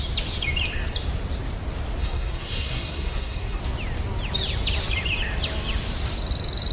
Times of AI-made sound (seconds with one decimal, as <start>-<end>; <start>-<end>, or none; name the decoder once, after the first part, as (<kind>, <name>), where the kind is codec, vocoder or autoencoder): 2.0-3.6 (codec, SNAC)